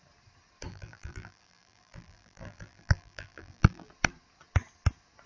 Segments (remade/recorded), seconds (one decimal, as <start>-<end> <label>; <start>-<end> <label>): 0.0-0.7 recorded; 0.7-3.9 remade; 3.9-5.3 recorded